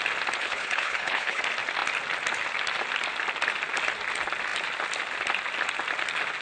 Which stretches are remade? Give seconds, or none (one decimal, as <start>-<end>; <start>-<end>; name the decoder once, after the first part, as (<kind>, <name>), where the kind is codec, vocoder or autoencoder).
0.4-1.4 (codec, HILCodec)